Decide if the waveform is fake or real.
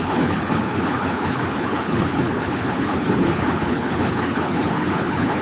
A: fake